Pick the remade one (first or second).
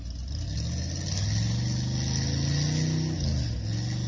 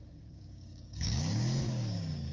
second